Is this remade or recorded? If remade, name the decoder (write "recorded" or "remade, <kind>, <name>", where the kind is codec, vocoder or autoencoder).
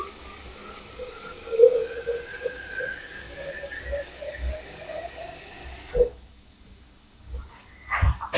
remade, codec, DAC